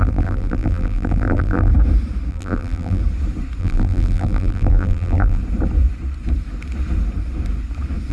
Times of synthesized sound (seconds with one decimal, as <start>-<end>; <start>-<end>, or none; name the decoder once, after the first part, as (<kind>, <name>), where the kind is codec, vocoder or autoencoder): 0.0-1.7 (vocoder, BigVGAN v2); 2.3-3.0; 3.6-5.4